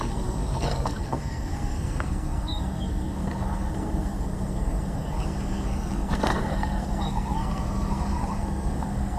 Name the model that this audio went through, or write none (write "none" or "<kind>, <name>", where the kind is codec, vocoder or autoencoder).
codec, SNAC